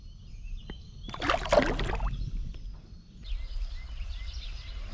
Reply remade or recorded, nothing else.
recorded